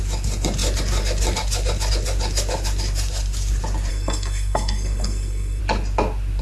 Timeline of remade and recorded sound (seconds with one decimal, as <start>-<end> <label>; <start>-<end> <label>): 0.0-3.9 recorded; 3.9-5.6 remade; 5.6-6.4 recorded